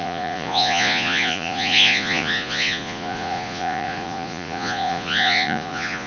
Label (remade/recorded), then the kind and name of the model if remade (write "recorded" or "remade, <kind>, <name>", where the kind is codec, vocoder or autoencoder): remade, vocoder, Vocos